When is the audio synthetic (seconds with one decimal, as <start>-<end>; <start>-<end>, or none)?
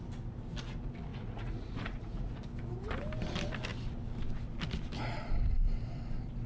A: 1.1-2.3